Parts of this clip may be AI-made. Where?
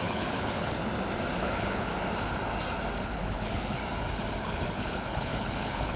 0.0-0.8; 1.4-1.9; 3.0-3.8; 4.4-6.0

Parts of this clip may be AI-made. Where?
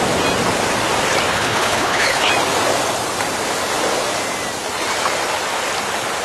1.3-2.3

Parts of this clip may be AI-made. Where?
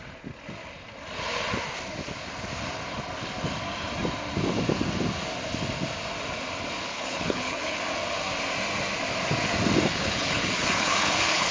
6.9-7.8; 9.9-11.5